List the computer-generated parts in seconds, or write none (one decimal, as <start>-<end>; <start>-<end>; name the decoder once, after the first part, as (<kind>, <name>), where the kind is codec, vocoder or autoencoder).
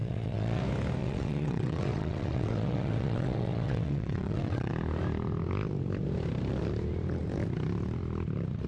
0.0-0.6 (vocoder, WaveNeXt); 1.0-4.7